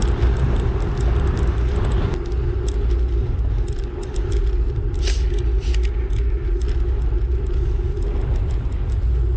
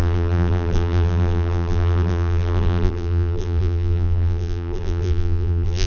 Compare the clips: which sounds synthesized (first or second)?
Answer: second